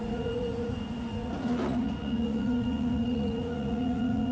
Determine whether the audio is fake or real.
fake